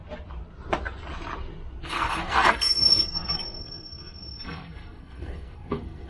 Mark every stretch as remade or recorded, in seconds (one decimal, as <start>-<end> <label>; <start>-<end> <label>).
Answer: 0.0-1.8 recorded; 1.8-6.1 remade